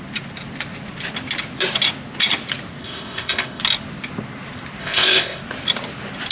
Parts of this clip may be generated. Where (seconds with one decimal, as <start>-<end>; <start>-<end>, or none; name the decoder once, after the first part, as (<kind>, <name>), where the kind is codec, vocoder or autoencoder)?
2.8-3.6 (codec, ZipCodec); 4.8-5.4